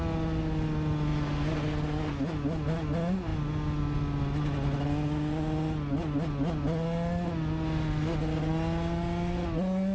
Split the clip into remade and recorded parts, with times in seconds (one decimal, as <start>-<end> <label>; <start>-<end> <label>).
0.0-9.9 recorded